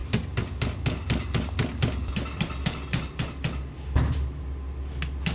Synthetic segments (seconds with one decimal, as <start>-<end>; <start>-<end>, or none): none